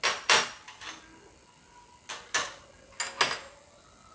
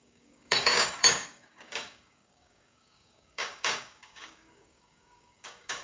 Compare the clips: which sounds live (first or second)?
first